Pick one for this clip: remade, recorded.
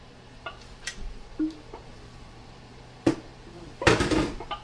remade